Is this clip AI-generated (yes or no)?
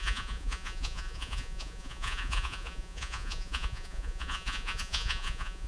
yes